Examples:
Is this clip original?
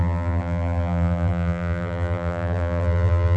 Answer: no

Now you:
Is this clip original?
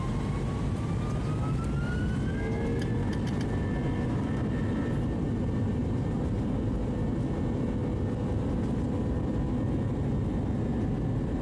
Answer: yes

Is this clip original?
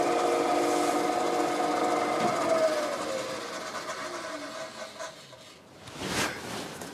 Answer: yes